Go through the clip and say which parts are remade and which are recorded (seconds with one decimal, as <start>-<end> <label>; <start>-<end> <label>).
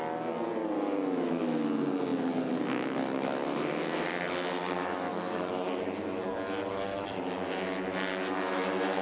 0.0-9.0 recorded